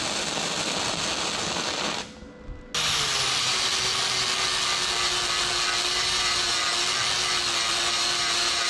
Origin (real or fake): real